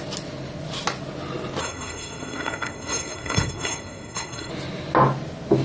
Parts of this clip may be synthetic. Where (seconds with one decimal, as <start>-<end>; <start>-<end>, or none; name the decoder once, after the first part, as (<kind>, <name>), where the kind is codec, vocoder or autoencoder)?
1.6-4.5 (codec, SNAC)